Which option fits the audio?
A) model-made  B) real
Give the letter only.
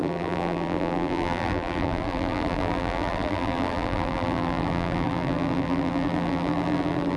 A